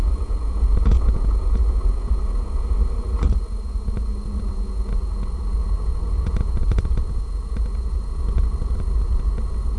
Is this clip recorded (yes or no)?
no